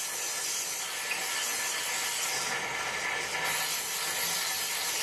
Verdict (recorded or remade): recorded